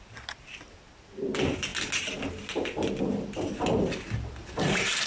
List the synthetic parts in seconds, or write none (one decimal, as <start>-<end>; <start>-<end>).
none